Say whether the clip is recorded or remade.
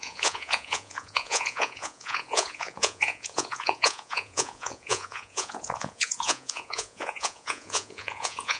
remade